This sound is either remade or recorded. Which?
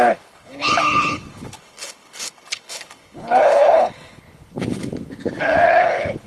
remade